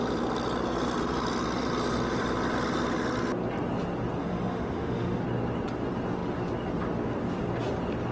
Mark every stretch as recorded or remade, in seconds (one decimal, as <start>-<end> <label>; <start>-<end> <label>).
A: 0.0-4.2 recorded; 4.2-5.2 remade; 5.2-8.1 recorded